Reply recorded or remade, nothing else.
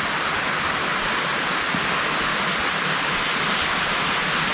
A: recorded